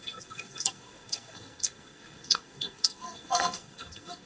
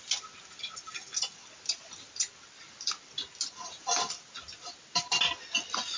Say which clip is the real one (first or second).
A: second